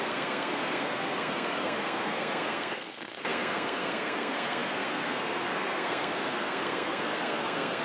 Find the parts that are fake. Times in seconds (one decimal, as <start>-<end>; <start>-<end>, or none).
0.0-7.8